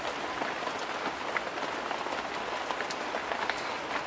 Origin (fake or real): real